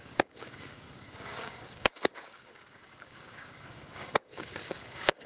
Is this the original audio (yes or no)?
no